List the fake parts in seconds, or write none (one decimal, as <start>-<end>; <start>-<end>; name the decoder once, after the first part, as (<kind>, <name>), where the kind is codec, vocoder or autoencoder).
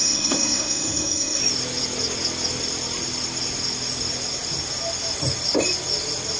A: 0.0-1.4 (codec, SNAC)